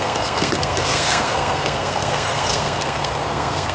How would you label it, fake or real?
fake